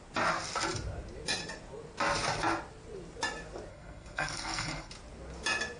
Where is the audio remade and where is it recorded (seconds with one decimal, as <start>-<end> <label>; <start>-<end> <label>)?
0.0-3.7 recorded; 3.7-4.9 remade; 4.9-5.8 recorded